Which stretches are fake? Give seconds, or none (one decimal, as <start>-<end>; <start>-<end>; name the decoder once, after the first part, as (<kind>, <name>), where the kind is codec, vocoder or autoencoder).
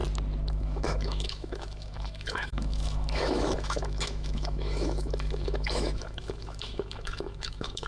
0.5-7.9 (autoencoder, DAC-VAE)